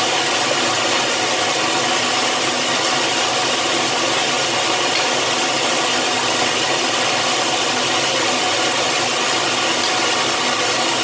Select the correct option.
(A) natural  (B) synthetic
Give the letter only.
A